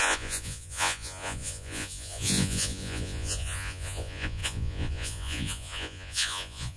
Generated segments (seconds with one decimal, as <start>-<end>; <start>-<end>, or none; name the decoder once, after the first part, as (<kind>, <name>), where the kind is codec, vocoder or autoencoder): 0.0-6.8 (vocoder, Vocos)